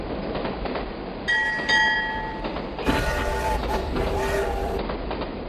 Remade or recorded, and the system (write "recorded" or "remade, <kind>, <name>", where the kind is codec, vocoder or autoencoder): recorded